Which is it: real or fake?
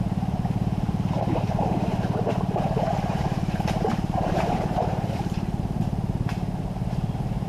fake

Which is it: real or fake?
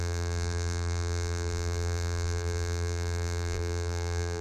fake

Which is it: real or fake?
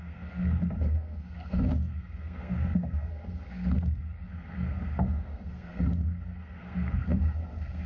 fake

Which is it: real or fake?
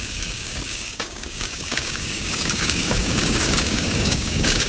fake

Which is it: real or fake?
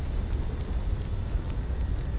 real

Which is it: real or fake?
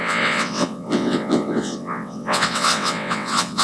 fake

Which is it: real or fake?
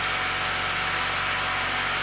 real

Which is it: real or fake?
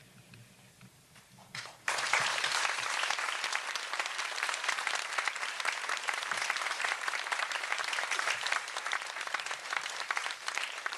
fake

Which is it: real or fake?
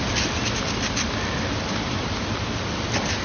real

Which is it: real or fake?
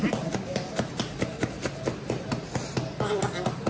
real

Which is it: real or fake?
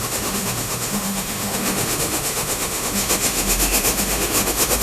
fake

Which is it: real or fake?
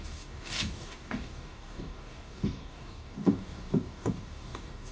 fake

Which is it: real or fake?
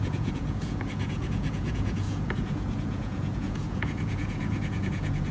fake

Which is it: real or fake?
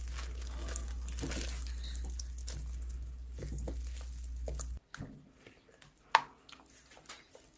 real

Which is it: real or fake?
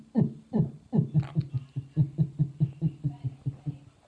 real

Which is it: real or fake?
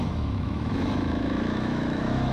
fake